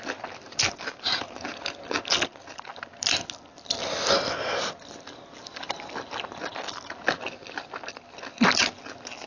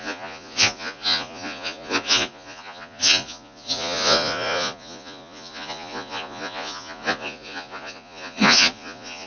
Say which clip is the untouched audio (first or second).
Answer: first